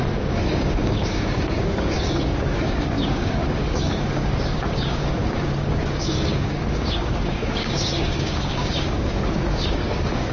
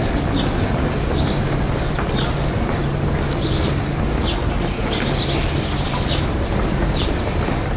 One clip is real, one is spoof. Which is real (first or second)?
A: second